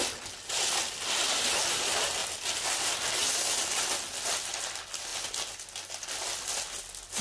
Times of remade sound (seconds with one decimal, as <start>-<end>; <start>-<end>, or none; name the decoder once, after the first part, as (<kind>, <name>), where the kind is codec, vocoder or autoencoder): none